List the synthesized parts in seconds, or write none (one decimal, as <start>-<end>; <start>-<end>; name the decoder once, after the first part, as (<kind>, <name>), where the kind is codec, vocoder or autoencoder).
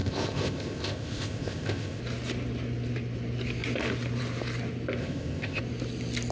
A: 0.0-2.0 (codec, ZipCodec); 5.0-5.6